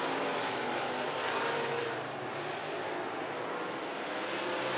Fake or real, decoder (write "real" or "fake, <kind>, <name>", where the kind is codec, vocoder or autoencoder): real